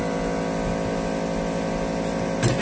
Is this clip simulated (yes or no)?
no